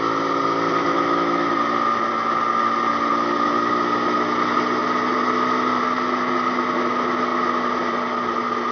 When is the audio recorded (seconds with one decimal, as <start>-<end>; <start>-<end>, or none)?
0.0-0.8; 1.5-8.7